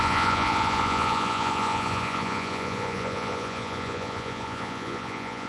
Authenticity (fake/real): fake